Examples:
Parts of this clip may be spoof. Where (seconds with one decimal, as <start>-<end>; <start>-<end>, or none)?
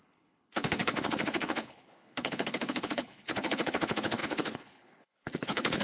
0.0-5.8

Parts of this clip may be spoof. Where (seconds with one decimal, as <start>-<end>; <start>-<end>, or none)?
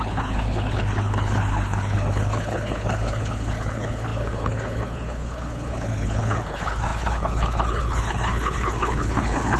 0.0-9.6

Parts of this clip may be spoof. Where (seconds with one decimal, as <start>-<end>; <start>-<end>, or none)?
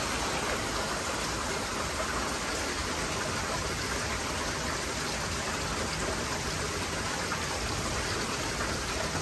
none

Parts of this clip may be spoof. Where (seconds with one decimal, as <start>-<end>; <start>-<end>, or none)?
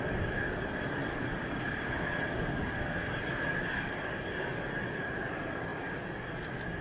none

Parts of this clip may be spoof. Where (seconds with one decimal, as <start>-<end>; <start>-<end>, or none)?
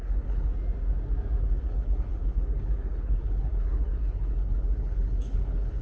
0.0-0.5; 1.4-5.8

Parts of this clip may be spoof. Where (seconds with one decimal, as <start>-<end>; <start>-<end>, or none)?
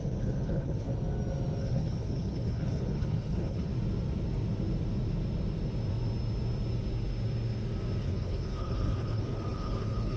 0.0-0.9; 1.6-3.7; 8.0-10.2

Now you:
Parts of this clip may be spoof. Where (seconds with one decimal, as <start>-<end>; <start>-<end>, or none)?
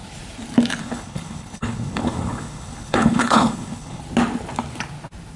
0.8-4.0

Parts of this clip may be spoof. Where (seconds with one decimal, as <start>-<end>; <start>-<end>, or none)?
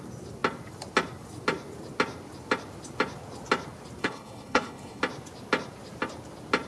4.0-5.0